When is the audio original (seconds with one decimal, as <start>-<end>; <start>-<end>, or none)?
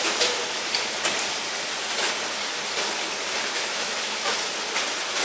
0.4-3.5; 4.3-5.2